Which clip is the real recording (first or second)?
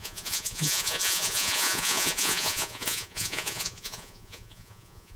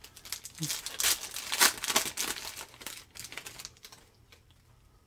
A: second